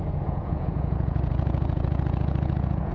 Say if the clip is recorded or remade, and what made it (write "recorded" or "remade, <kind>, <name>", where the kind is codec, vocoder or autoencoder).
remade, vocoder, Vocos